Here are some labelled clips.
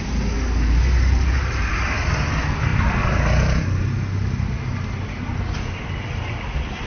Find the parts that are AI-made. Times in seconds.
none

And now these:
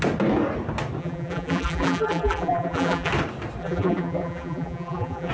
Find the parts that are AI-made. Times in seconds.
1.0-3.1 (vocoder, BigVGAN v2); 3.6-5.3

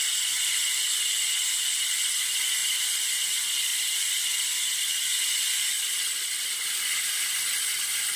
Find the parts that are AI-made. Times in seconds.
none

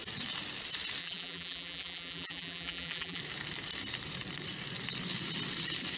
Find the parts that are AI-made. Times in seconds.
1.0-3.2 (vocoder, BigVGAN v2)